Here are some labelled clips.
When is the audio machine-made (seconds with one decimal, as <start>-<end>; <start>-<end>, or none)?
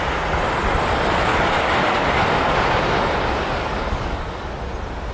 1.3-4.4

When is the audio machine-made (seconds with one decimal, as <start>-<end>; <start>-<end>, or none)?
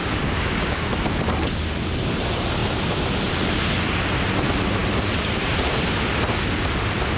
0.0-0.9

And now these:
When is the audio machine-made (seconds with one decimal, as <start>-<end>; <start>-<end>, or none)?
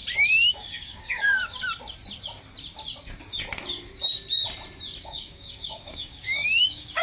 0.5-1.4; 5.0-7.0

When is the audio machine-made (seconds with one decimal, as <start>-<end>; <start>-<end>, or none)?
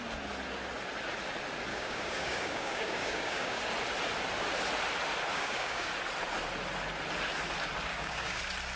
1.7-3.6; 5.3-5.9; 7.9-8.4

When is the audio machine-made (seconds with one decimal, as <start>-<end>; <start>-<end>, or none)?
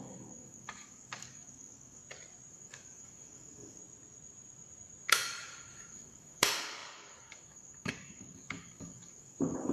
0.0-2.0; 2.5-3.8; 5.1-9.7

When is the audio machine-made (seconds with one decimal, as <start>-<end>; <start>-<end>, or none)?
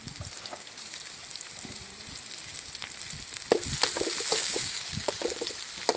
4.4-5.2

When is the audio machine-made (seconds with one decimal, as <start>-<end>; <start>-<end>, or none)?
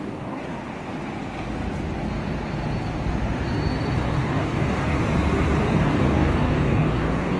0.0-0.4; 4.1-5.0; 5.8-7.4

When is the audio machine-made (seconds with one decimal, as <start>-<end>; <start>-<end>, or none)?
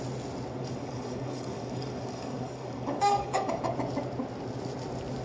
0.6-3.7